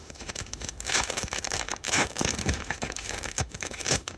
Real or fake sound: fake